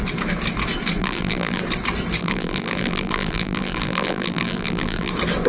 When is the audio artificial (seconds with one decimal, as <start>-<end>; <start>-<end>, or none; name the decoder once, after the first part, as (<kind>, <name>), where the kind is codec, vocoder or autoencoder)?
1.0-1.6 (vocoder, BigVGAN v2); 2.2-5.1